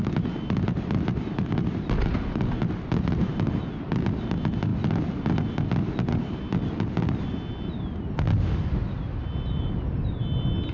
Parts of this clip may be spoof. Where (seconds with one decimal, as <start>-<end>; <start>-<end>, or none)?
none